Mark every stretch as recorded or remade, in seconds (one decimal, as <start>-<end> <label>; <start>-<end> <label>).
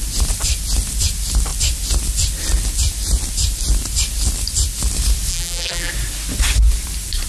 0.0-5.3 recorded; 5.3-5.9 remade; 5.9-7.3 recorded